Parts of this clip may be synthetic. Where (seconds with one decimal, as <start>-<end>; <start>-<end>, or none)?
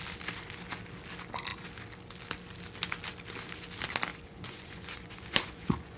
4.1-6.0